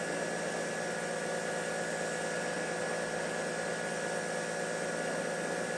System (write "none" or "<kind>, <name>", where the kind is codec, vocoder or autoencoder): none